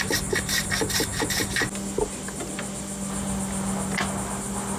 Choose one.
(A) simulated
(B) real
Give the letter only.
B